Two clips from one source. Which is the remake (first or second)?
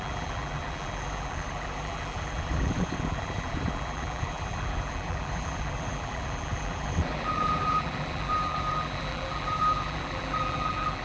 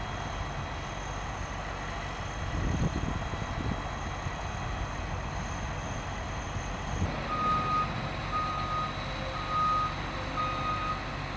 first